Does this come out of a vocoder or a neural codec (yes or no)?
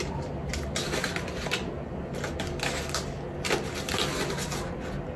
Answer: no